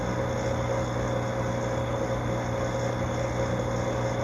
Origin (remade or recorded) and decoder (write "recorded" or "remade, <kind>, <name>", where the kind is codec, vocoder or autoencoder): recorded